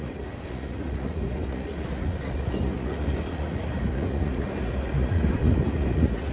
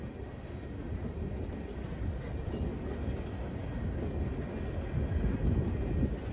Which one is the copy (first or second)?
first